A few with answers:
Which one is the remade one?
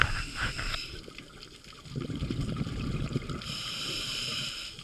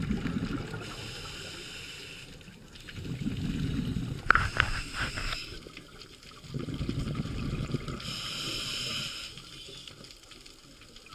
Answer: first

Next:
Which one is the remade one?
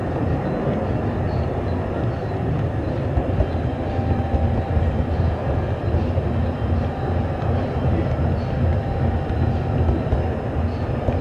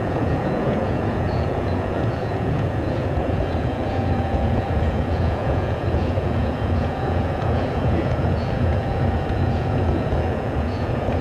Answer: second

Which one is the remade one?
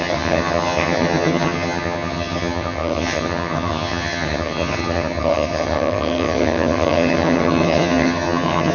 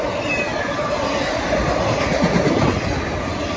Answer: first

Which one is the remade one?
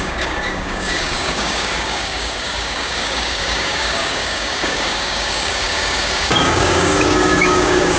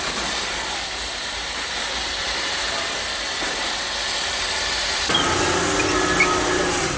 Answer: first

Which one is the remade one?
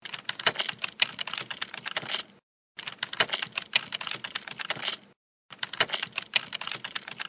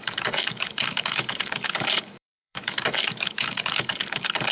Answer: second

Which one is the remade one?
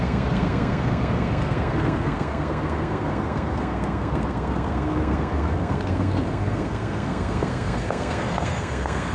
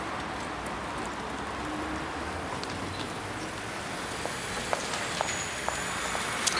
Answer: first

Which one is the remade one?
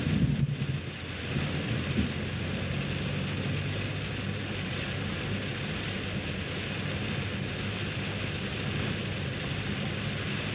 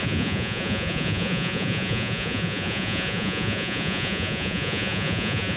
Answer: second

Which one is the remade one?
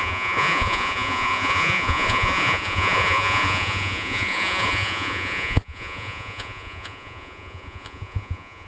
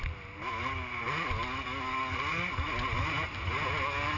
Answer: first